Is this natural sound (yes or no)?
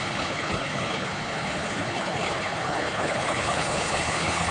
no